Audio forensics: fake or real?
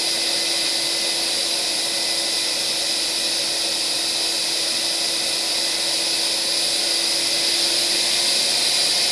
real